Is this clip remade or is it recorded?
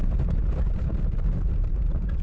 remade